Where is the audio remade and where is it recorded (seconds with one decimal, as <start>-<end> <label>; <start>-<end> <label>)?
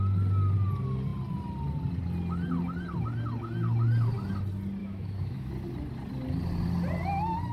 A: 0.0-4.8 recorded; 4.8-5.5 remade; 5.5-7.5 recorded